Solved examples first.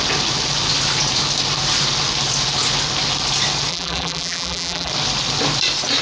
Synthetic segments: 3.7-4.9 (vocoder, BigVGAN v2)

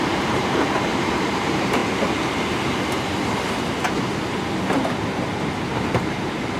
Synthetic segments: 0.0-1.8 (vocoder, BigVGAN v2); 5.6-6.6

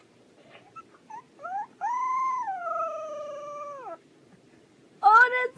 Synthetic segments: none